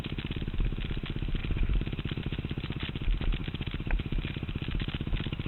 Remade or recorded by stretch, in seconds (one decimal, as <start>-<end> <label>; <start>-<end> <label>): 0.0-5.5 recorded